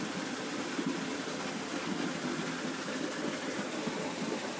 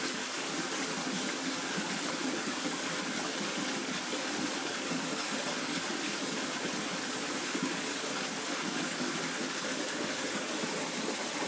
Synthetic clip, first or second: second